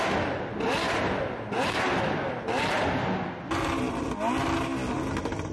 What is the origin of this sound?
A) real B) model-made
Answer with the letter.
A